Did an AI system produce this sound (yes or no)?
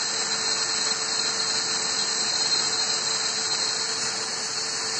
no